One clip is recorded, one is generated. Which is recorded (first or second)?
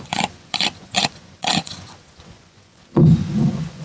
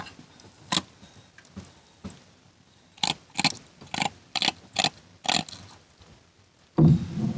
second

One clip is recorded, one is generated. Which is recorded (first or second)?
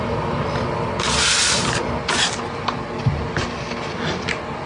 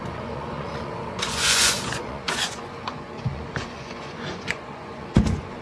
first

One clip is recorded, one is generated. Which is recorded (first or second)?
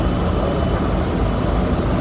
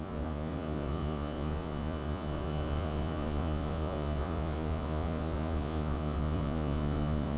first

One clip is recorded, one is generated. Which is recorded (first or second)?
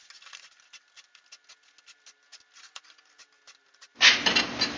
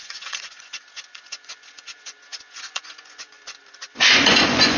first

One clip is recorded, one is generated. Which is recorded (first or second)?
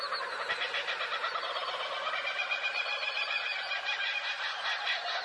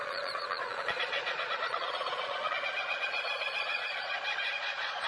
first